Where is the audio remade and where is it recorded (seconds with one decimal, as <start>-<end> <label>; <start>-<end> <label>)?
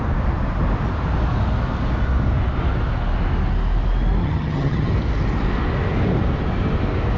0.0-4.2 recorded; 4.2-4.9 remade; 4.9-7.2 recorded